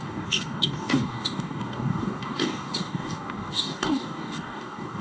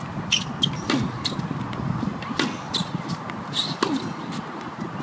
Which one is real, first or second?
second